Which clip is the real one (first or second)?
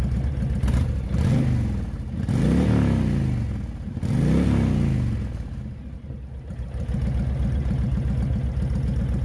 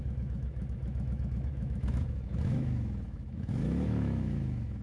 first